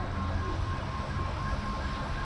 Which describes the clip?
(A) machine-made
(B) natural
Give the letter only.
B